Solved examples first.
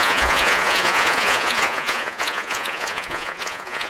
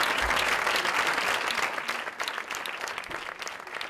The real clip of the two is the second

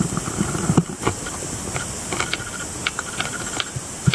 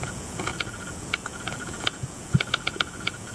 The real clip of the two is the first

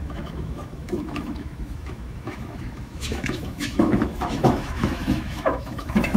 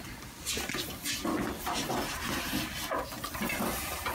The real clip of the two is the second